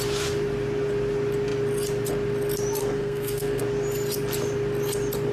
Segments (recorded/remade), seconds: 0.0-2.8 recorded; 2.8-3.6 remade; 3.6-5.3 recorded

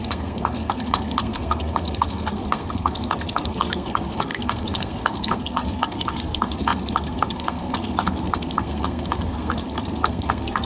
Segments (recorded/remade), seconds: 0.0-10.7 remade

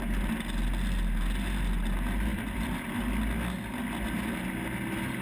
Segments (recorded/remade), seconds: 0.0-2.3 recorded; 2.3-2.9 remade; 2.9-5.2 recorded

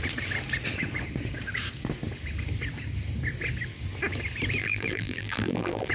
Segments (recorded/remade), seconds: 0.0-4.6 recorded; 4.6-5.9 remade

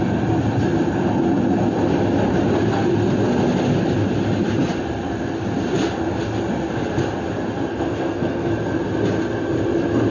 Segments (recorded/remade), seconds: 0.0-7.7 recorded; 7.7-8.5 remade; 8.5-10.1 recorded

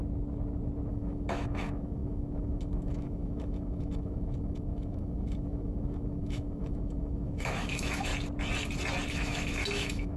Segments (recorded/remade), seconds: 0.0-0.9 recorded; 0.9-8.1 remade; 8.1-9.1 recorded; 9.1-10.2 remade

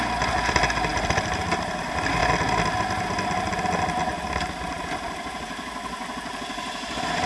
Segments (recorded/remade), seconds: 0.0-0.9 recorded; 0.9-1.8 remade; 1.8-4.1 recorded; 4.1-4.8 remade; 4.8-7.3 recorded

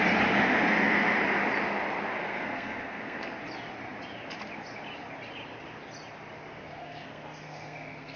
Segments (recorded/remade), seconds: 0.0-2.2 recorded; 2.2-3.4 remade; 3.4-6.5 recorded; 6.5-8.2 remade